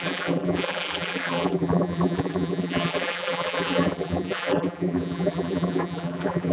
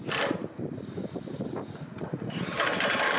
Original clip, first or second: second